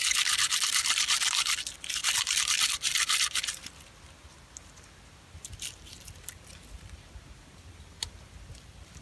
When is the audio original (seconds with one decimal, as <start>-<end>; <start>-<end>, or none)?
0.0-9.0